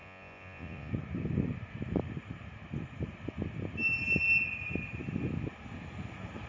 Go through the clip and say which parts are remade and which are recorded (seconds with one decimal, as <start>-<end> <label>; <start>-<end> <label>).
0.0-0.9 remade; 0.9-6.5 recorded